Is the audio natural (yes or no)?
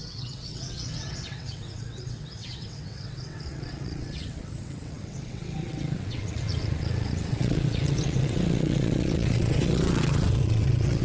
no